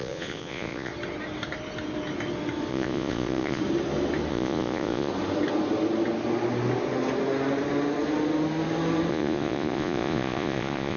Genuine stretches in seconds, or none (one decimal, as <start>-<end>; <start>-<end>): 0.9-2.7; 3.6-4.3; 5.1-9.1